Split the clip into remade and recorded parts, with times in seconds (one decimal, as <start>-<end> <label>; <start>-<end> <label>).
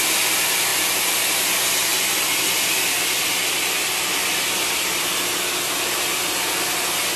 0.0-7.2 recorded